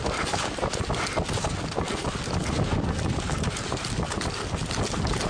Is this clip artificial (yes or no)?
no